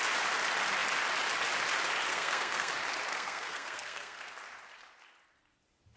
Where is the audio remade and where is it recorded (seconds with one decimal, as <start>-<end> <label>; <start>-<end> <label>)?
0.0-2.1 recorded; 2.1-2.7 remade; 2.7-3.1 recorded; 3.1-4.3 remade; 4.3-6.0 recorded